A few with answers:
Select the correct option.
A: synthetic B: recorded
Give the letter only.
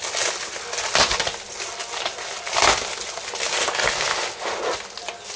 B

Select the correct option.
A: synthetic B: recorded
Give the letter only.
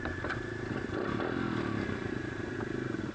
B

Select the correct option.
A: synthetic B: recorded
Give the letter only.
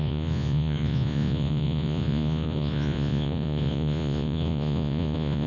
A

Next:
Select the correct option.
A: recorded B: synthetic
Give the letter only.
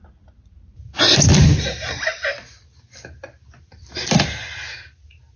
A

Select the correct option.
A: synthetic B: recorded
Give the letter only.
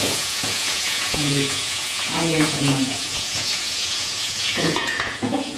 A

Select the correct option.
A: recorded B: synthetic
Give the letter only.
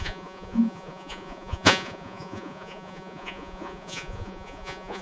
B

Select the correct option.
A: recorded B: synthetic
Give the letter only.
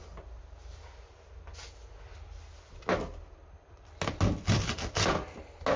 A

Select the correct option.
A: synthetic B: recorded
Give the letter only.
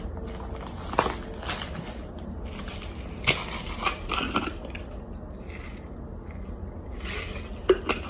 B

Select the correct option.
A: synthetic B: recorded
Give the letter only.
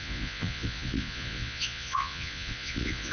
A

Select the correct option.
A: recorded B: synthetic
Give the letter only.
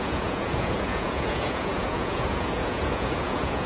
B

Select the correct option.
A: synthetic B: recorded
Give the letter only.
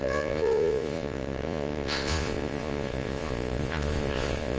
A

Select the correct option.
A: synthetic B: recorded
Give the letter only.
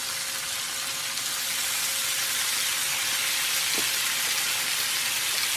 B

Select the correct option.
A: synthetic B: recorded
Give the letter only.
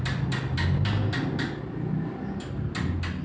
B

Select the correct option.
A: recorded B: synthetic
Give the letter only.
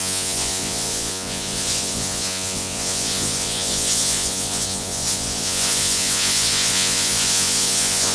B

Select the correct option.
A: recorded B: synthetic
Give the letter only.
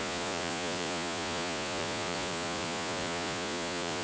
B